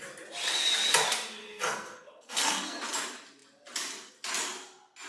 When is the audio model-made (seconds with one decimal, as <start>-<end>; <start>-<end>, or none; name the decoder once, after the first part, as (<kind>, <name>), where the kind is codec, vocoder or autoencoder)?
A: 1.4-2.8 (codec, SNAC)